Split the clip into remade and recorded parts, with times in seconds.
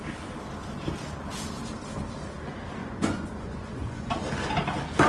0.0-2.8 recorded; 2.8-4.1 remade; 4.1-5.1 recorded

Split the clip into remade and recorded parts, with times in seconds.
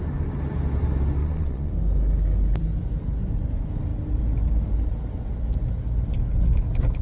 0.0-1.2 recorded; 1.2-1.7 remade; 1.7-7.0 recorded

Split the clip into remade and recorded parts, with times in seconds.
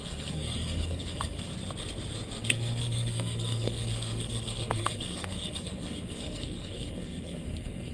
0.0-1.5 remade; 1.5-2.4 recorded; 2.4-7.9 remade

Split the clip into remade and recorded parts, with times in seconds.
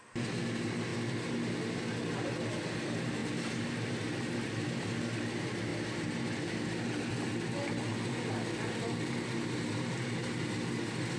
0.0-11.2 recorded